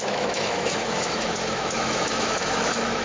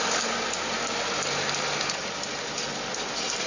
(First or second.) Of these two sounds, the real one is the second